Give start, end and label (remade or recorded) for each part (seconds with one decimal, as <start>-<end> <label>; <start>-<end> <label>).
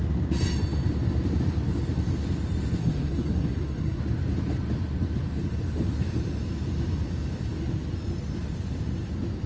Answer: 0.0-2.8 recorded; 2.8-4.0 remade; 4.0-9.5 recorded